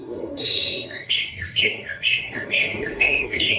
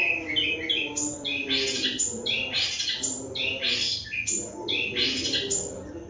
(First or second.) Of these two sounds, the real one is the second